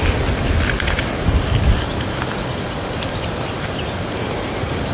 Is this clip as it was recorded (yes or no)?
yes